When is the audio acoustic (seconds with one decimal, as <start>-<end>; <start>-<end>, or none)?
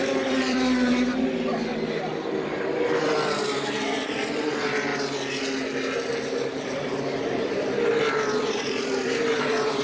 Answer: 1.7-2.8; 4.9-7.2